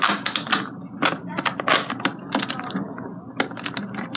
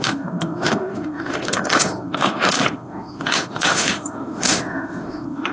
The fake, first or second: second